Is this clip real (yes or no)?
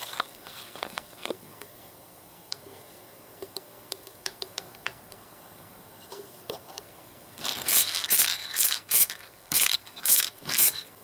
no